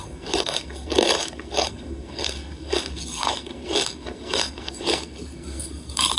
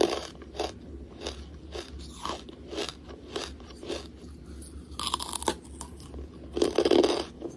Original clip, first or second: second